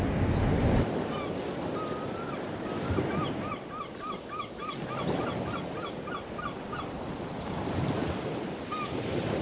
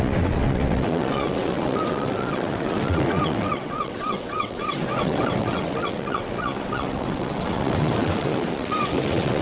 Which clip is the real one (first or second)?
first